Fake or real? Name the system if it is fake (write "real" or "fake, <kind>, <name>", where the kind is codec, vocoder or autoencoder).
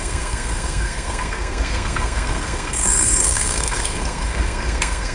fake, codec, SNAC